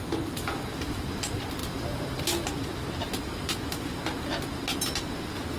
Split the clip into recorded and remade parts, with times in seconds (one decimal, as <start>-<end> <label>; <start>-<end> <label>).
0.0-1.6 recorded; 1.6-2.2 remade; 2.2-5.6 recorded